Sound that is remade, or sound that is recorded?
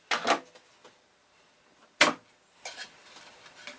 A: recorded